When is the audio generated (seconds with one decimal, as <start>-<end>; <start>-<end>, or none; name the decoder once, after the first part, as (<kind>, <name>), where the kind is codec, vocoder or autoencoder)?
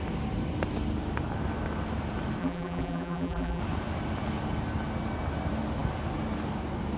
2.4-3.6 (vocoder, BigVGAN v2)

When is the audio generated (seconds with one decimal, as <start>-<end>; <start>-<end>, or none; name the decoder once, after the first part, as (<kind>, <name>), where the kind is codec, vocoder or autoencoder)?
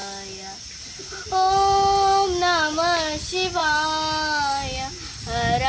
none